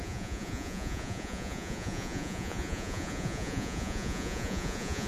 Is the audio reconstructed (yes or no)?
yes